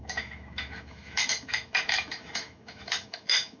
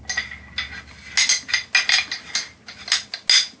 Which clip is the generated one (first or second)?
first